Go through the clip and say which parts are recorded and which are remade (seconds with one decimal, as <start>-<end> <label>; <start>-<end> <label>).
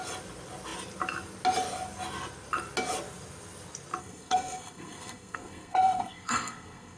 0.0-4.0 recorded; 4.0-7.0 remade